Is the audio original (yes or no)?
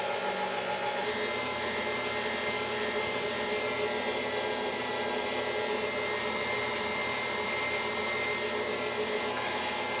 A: yes